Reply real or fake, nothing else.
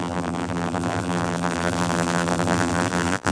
fake